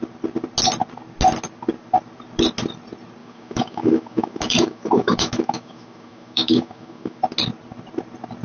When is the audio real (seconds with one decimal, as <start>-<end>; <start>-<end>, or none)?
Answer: 0.0-3.2; 7.2-8.4